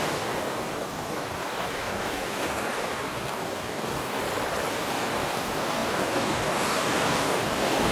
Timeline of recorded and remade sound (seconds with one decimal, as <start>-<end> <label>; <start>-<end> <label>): 0.0-4.2 remade; 4.2-4.7 recorded; 4.7-7.9 remade